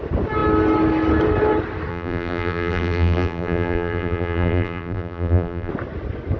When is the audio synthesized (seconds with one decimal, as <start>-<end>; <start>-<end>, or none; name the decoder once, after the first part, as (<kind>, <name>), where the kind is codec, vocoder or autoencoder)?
1.9-5.7 (vocoder, BigVGAN v2)